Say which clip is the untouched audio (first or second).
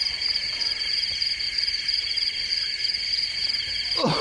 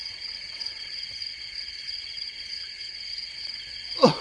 first